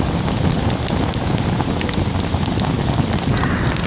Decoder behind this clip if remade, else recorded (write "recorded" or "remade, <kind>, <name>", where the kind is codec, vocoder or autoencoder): recorded